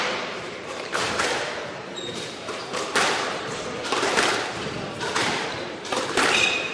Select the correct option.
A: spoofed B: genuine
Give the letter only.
A